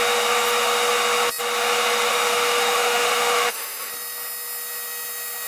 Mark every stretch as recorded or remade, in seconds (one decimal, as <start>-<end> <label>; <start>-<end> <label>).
0.0-2.1 recorded; 2.1-3.9 remade; 3.9-5.5 recorded